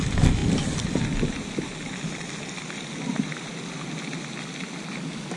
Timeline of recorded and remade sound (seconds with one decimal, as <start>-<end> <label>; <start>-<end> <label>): 0.0-5.4 recorded